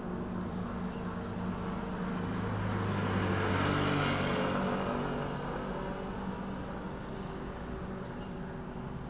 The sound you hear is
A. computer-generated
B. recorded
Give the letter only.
B